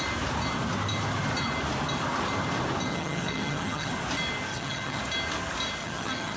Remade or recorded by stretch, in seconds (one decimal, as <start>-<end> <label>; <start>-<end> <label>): 0.0-2.9 recorded; 2.9-3.9 remade; 3.9-4.5 recorded; 4.5-5.0 remade; 5.0-5.8 recorded; 5.8-6.4 remade